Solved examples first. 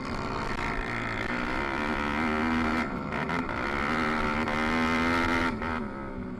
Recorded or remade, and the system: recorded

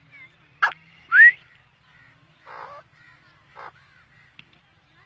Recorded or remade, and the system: recorded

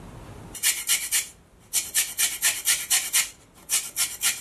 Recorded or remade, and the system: recorded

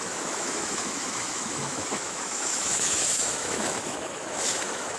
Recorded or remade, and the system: remade, autoencoder, DAC-VAE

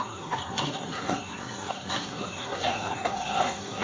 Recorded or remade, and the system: remade, codec, SNAC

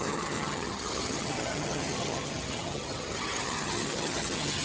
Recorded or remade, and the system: remade, vocoder, HiFi-GAN